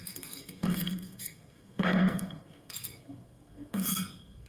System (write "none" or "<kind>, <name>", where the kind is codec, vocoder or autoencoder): codec, SNAC